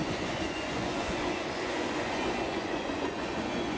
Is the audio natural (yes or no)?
no